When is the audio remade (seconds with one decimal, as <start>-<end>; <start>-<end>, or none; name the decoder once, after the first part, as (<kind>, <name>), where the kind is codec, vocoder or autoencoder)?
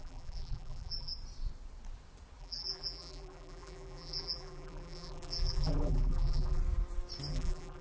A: 0.0-1.1 (vocoder, BigVGAN v2); 2.4-6.6; 7.3-7.8